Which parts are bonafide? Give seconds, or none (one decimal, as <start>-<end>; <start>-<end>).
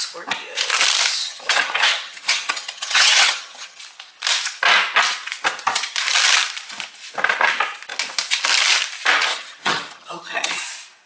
0.0-1.2; 3.8-9.3; 10.5-11.1